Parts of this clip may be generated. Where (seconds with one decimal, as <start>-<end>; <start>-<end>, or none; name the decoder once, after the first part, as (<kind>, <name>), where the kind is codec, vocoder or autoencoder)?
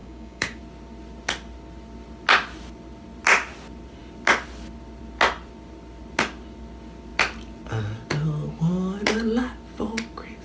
0.0-0.6 (codec, DAC)